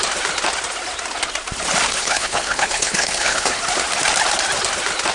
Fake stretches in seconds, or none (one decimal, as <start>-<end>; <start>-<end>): 1.9-3.6